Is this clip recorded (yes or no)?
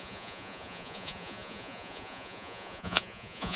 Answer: no